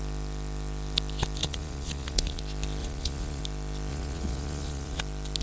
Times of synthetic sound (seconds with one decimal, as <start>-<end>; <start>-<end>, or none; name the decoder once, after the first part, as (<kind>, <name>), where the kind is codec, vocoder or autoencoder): 1.4-2.4 (vocoder, Vocos); 2.8-3.4; 3.9-5.0